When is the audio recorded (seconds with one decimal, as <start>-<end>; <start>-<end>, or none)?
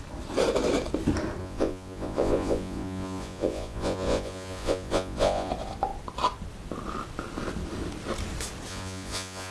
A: 0.0-1.4; 5.5-8.7